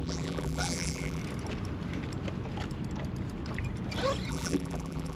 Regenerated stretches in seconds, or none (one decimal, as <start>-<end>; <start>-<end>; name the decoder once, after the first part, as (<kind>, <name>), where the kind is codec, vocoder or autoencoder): 0.0-1.2 (vocoder, BigVGAN v2); 4.3-5.2